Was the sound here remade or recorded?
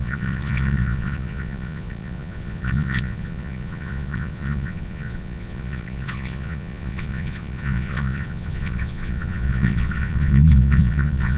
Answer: remade